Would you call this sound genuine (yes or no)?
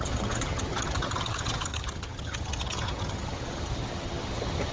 no